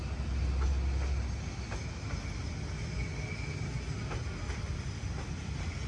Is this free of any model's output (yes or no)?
yes